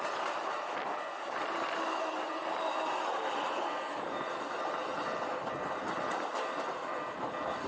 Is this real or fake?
real